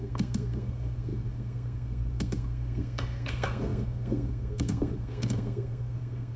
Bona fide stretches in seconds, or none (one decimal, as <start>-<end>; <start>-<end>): none

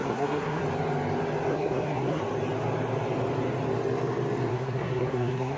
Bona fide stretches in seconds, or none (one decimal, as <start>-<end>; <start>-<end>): 0.6-1.5; 2.2-4.5